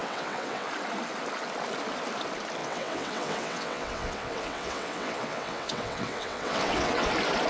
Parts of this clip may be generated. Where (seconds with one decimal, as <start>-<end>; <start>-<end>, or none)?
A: 0.0-0.7; 2.6-7.1